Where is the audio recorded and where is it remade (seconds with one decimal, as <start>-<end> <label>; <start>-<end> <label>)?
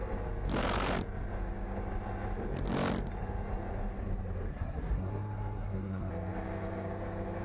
0.0-4.5 recorded; 4.5-6.1 remade; 6.1-7.4 recorded